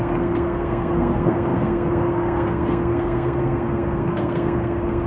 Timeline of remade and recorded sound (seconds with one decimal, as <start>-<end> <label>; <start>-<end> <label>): 0.0-5.1 remade